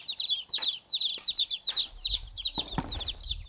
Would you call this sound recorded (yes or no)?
yes